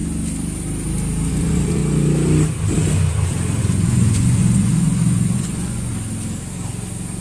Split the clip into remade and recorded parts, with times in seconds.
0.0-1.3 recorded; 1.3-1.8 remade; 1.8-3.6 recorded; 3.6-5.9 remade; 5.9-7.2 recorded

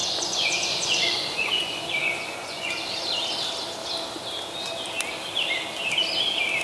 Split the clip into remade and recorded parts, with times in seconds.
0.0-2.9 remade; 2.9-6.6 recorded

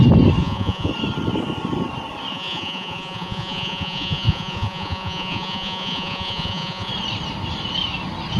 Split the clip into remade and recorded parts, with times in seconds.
0.0-0.4 recorded; 0.4-0.9 remade; 0.9-2.3 recorded; 2.3-6.9 remade; 6.9-8.4 recorded